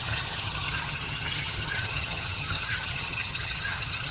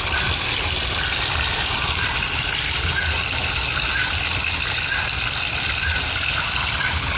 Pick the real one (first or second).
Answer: second